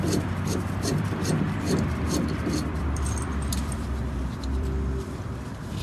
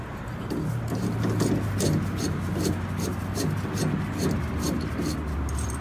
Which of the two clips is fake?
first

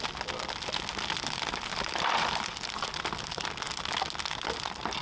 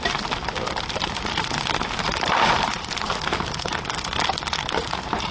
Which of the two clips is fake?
second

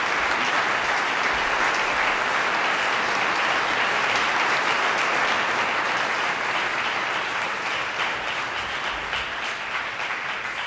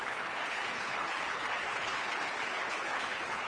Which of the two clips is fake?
second